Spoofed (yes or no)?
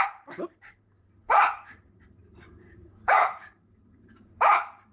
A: yes